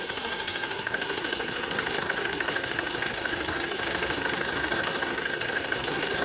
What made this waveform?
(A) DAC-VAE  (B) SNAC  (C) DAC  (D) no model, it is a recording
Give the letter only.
B